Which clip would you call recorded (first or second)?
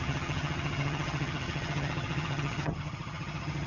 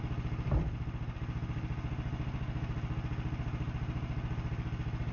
second